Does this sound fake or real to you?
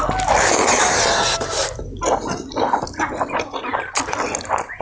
real